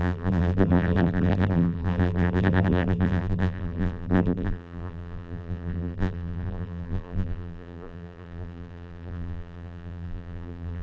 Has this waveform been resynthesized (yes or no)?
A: yes